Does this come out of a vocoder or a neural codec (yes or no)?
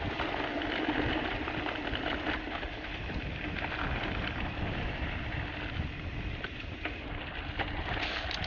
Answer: no